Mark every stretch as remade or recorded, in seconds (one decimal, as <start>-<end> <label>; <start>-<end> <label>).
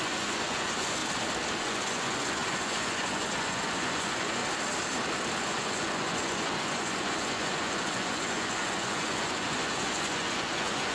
0.0-1.0 remade; 1.0-1.6 recorded; 1.6-4.4 remade; 4.4-5.4 recorded; 5.4-10.9 remade